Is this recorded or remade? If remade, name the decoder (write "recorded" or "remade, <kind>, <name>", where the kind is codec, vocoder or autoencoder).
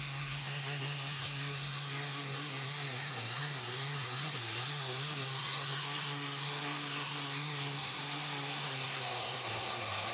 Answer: remade, codec, SNAC